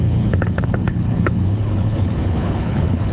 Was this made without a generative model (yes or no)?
no